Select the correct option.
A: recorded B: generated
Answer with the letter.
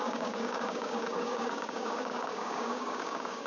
B